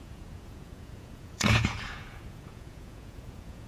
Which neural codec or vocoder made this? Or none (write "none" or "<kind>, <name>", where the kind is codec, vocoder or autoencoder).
vocoder, Vocos